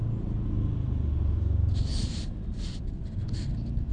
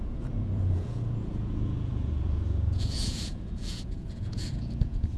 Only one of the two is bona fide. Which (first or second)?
first